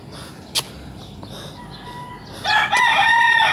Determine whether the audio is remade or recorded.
recorded